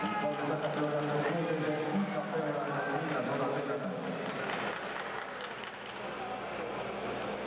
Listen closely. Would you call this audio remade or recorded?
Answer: recorded